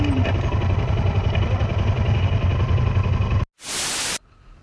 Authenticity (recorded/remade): recorded